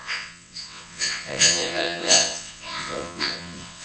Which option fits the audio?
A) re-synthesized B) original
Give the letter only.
A